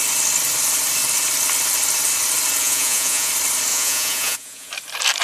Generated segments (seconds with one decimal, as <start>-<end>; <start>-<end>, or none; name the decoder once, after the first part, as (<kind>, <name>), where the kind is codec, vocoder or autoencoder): 2.6-3.3 (vocoder, Vocos); 3.7-4.7